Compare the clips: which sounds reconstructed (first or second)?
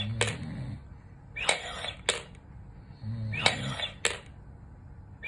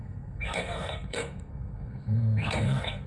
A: second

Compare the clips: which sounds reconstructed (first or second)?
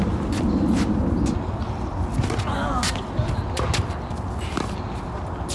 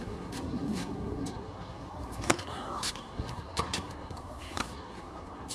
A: second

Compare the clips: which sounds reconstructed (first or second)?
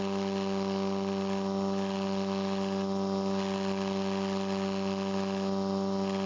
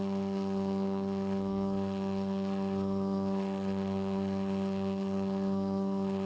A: second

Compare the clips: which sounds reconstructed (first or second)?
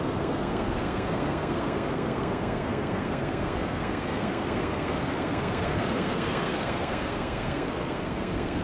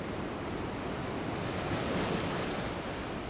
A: first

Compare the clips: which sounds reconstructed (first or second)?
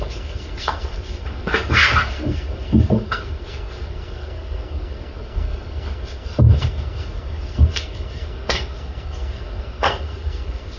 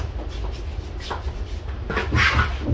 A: first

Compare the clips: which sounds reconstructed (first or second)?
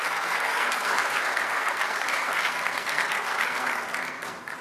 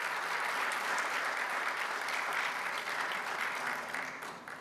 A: first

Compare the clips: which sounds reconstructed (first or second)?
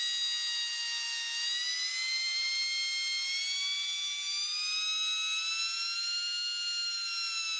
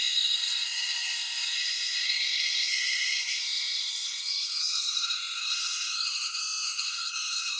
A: second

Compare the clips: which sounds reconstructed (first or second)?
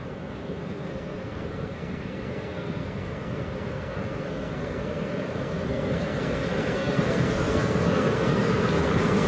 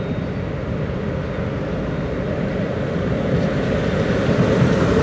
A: first